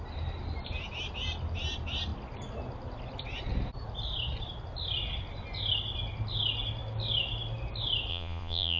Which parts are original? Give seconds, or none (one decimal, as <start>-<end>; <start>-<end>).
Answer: 0.0-8.1